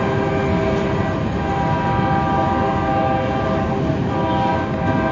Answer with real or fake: real